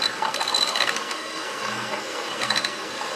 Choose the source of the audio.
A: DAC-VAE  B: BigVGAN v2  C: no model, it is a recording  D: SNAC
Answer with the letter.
D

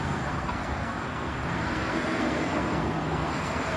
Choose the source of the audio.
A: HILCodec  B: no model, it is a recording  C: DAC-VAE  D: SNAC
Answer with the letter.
D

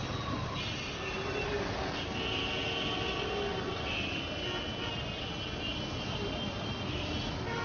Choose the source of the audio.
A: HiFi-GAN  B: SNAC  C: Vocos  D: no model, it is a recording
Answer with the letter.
D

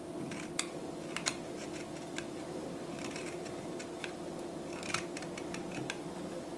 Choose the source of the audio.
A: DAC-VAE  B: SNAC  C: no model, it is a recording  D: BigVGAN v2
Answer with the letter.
C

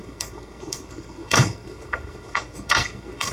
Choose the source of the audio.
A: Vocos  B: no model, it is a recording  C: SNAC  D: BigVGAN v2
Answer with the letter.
C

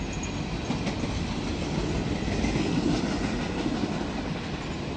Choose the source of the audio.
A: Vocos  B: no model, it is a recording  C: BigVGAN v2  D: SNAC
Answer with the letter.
B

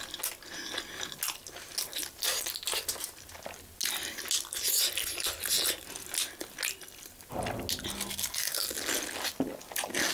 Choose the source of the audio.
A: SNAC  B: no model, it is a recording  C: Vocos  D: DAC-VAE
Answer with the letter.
B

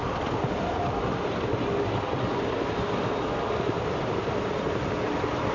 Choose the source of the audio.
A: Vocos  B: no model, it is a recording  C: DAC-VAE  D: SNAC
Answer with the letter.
B